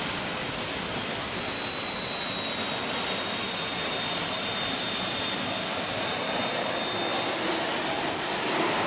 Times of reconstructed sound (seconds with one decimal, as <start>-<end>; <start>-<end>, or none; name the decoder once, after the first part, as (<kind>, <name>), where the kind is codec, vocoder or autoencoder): none